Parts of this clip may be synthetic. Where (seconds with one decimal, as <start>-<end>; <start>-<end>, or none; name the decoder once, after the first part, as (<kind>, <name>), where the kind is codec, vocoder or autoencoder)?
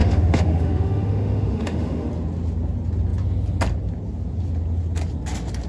0.0-2.1 (autoencoder, DAC-VAE)